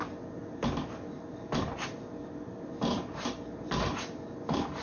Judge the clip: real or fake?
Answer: real